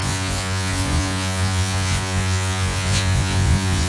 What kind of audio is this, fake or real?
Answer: fake